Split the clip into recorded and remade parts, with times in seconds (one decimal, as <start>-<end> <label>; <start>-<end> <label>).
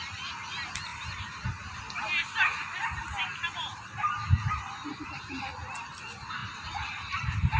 0.0-0.9 recorded; 0.9-1.8 remade; 1.8-6.4 recorded; 6.4-7.6 remade